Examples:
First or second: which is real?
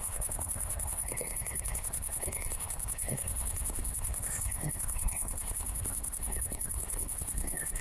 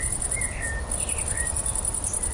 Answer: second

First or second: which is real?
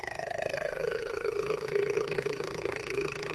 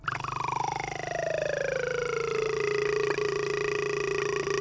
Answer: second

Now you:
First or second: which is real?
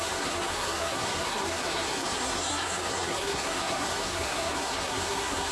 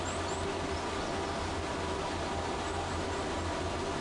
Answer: second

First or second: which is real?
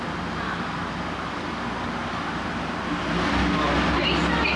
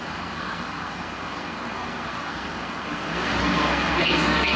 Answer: first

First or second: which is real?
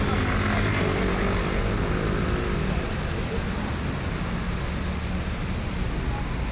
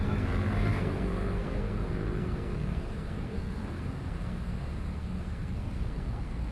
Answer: first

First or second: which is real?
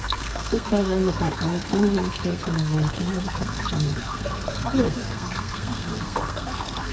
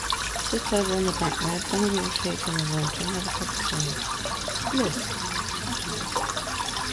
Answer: second